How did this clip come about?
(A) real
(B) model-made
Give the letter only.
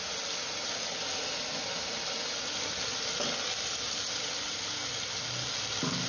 A